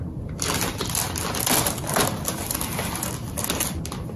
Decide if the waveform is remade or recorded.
recorded